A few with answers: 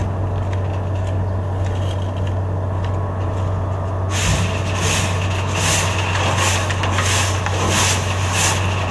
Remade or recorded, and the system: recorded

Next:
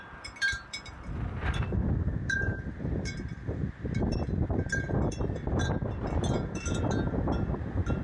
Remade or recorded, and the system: remade, vocoder, BigVGAN v2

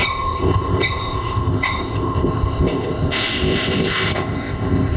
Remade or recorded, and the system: remade, codec, ZipCodec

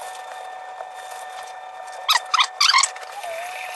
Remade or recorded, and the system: recorded